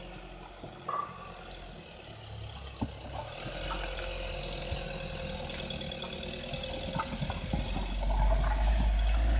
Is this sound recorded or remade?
recorded